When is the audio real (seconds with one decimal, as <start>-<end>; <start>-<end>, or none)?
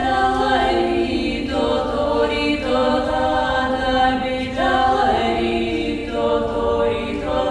0.0-2.8; 3.7-7.5